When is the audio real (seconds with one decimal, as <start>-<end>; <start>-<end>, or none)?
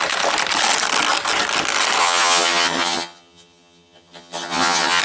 0.0-2.0